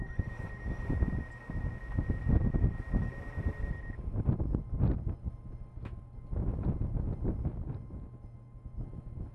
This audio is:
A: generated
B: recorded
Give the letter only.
B